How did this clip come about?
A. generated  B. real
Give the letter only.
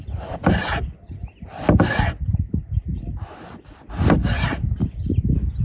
B